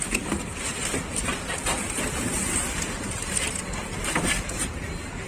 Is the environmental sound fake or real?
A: real